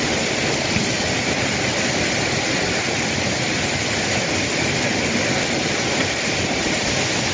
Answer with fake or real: real